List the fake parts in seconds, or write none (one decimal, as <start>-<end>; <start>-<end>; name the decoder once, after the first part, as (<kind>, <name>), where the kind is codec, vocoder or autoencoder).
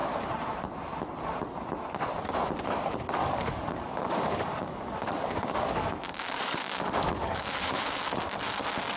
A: 3.2-7.8 (codec, DAC)